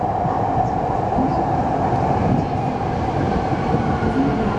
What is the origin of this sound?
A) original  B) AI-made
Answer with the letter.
A